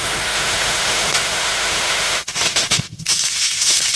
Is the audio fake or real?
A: fake